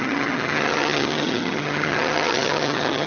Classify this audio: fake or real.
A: fake